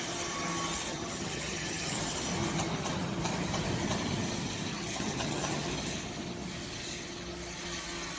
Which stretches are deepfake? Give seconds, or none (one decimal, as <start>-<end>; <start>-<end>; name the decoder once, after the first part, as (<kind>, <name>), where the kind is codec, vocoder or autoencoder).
0.9-2.0 (vocoder, HiFi-GAN); 4.7-5.7